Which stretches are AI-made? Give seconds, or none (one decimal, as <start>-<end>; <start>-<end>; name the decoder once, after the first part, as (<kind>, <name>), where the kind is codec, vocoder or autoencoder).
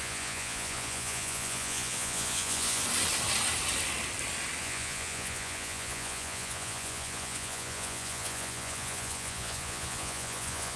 0.0-2.8 (vocoder, Vocos); 4.6-10.8